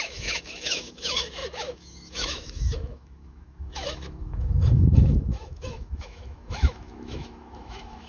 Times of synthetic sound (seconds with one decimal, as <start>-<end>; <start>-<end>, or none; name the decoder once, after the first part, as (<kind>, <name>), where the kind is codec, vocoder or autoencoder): 0.0-8.1 (autoencoder, DAC-VAE)